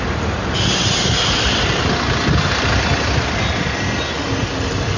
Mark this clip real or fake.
real